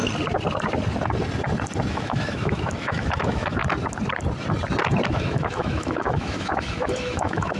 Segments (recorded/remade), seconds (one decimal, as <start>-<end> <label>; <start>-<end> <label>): 0.0-1.9 recorded; 1.9-3.6 remade; 3.6-5.1 recorded; 5.1-7.6 remade